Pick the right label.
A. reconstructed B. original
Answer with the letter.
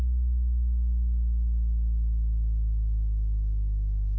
A